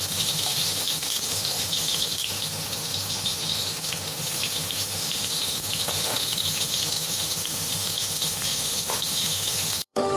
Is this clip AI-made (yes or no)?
yes